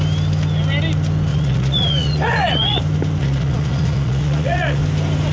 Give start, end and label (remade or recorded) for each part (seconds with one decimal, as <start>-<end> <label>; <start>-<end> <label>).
0.0-1.3 recorded; 1.3-2.8 remade; 2.8-3.2 recorded; 3.2-4.8 remade; 4.8-5.3 recorded